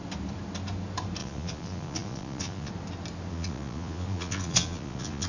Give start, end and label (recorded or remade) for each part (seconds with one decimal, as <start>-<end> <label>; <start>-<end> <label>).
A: 0.0-1.2 recorded; 1.2-2.7 remade; 2.7-3.3 recorded; 3.3-5.3 remade